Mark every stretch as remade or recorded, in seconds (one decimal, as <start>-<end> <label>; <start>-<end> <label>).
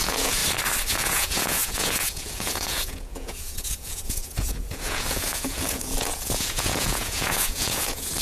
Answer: 0.0-0.4 remade; 0.4-0.9 recorded; 0.9-8.2 remade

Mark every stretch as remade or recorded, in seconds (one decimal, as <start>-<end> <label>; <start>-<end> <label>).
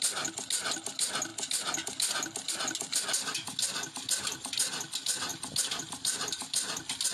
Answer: 0.0-7.1 recorded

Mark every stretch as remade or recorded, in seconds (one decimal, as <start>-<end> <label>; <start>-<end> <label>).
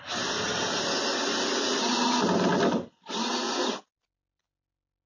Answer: 0.0-5.1 recorded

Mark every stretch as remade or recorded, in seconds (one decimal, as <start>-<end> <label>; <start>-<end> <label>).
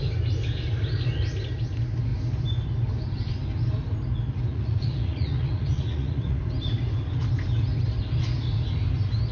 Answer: 0.0-4.5 recorded; 4.5-6.4 remade; 6.4-9.3 recorded